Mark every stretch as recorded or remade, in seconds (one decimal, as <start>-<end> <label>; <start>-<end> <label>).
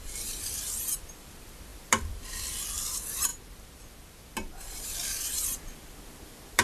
0.0-3.3 remade; 3.3-4.7 recorded; 4.7-6.6 remade